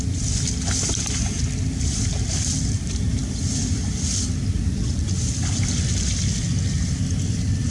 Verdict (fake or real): fake